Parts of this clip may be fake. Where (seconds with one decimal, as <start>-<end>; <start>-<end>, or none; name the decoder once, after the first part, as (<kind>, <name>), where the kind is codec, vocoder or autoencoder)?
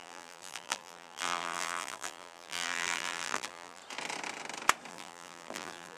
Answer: 0.0-3.8 (vocoder, BigVGAN v2); 4.9-6.0